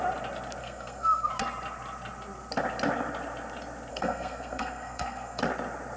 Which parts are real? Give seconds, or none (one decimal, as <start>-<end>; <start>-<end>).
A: 0.0-0.6; 1.3-3.9; 5.4-6.0